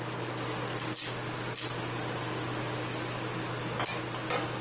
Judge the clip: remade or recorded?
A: recorded